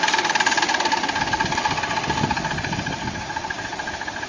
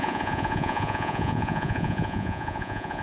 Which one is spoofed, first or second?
second